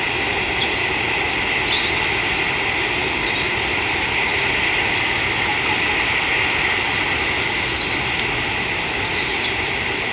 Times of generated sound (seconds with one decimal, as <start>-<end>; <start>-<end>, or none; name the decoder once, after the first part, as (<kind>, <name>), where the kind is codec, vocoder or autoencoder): none